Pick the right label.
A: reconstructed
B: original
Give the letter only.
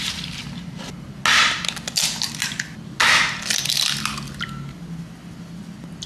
B